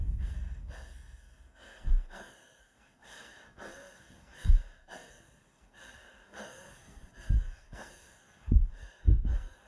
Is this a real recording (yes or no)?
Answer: no